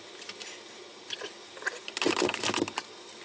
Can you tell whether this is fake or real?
real